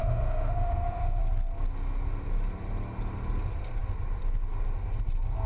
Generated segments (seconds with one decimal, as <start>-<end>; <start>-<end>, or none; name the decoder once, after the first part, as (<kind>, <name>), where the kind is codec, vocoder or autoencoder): 0.0-1.2 (autoencoder, DAC-VAE)